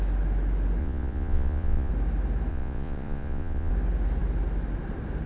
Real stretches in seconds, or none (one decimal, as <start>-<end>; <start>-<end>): 0.0-0.8; 1.9-2.5; 3.7-5.3

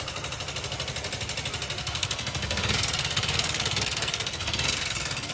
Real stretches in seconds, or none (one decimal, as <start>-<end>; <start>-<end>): 0.0-1.8